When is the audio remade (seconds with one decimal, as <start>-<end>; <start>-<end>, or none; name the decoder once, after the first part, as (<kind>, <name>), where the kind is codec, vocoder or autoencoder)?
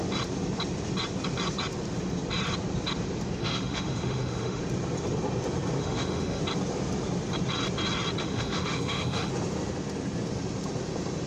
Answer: 3.4-4.6 (autoencoder, DAC-VAE); 5.8-6.4; 8.2-9.3